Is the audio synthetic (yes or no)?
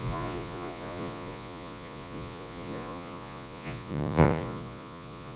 yes